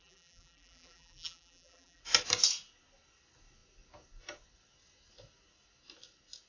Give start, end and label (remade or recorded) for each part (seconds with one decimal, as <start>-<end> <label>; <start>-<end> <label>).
0.0-2.0 remade; 2.0-6.5 recorded